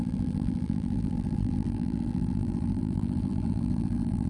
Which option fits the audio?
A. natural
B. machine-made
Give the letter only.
B